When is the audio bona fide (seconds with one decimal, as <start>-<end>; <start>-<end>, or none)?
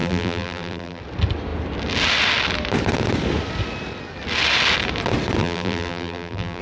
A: 1.0-5.4